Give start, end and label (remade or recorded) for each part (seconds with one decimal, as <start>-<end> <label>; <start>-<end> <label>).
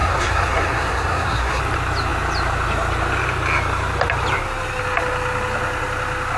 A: 0.0-1.6 remade; 1.6-6.4 recorded